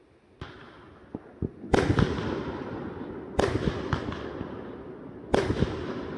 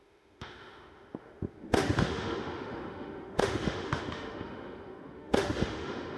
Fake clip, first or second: second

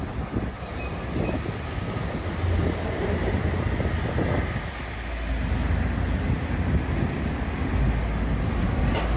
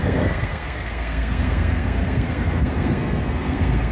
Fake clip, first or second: second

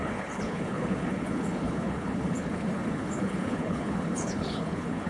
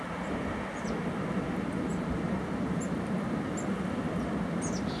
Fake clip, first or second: first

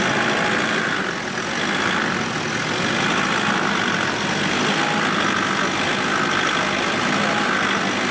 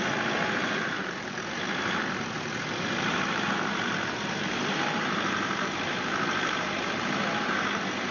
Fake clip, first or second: second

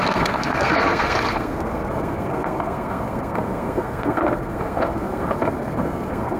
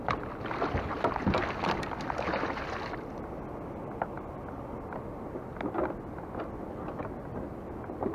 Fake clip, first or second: first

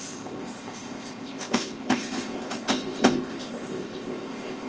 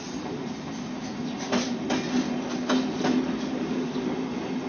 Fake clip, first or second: first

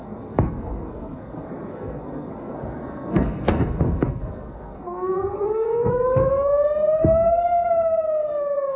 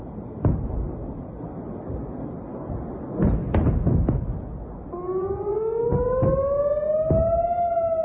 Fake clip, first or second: first